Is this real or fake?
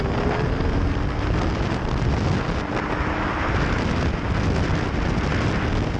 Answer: real